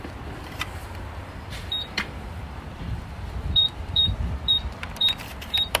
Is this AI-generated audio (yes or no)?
yes